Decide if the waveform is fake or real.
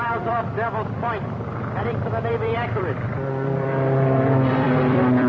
fake